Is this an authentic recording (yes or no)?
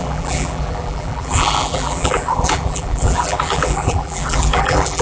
no